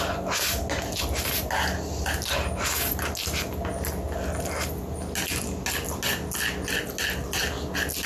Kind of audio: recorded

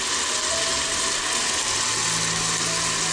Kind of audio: recorded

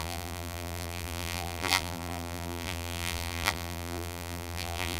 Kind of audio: remade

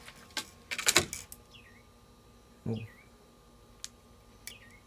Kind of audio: recorded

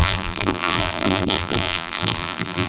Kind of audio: remade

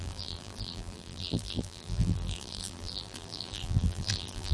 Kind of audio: remade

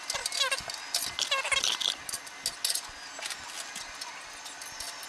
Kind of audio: recorded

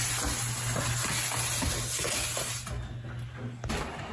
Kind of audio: recorded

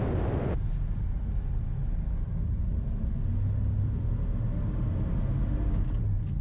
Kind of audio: recorded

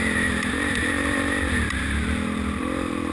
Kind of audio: remade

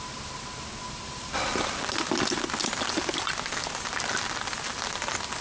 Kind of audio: recorded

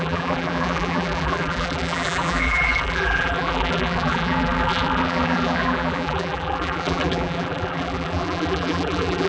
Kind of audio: remade